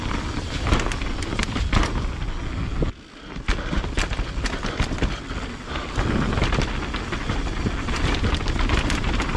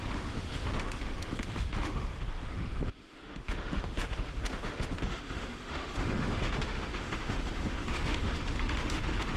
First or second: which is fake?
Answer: second